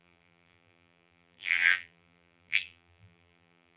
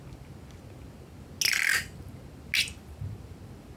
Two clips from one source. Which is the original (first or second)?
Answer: second